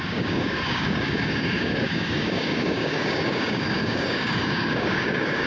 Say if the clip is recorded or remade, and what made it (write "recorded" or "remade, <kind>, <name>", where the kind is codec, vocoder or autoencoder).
remade, codec, DAC